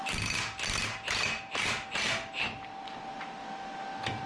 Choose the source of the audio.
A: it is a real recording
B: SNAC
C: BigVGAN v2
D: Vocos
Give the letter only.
A